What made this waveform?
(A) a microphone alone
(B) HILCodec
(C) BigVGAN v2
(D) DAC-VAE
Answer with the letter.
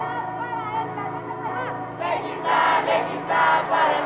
A